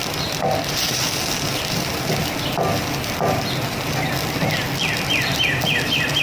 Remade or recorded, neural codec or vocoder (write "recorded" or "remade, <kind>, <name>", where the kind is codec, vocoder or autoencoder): recorded